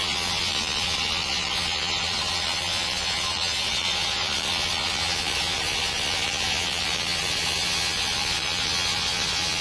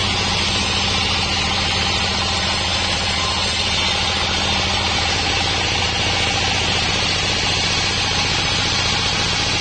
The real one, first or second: second